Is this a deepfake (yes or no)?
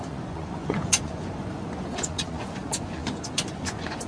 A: yes